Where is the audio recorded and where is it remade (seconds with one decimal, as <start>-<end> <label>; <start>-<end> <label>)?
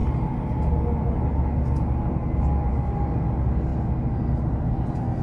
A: 0.0-5.2 recorded